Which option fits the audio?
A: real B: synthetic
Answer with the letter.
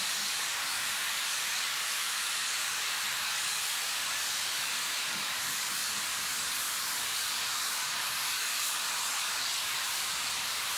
B